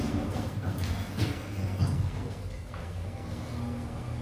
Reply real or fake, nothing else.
fake